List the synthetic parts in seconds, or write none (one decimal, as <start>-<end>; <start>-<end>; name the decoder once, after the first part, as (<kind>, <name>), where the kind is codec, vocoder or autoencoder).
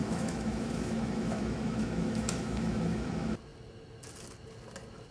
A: 0.0-3.1 (autoencoder, DAC-VAE)